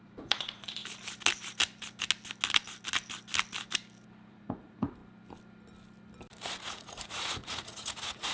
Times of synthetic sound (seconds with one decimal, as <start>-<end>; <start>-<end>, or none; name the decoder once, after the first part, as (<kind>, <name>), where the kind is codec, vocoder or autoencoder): 0.0-0.8 (vocoder, Vocos); 4.3-5.0; 6.6-8.3